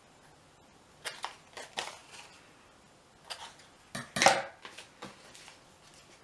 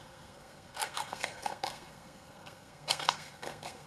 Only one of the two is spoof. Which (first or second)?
second